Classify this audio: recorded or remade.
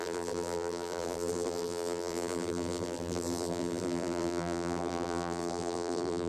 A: remade